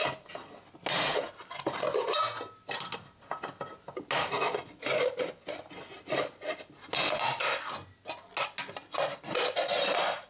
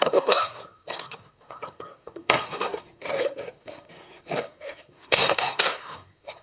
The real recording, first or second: first